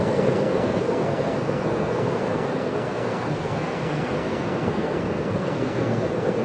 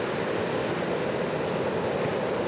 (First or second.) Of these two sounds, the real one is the second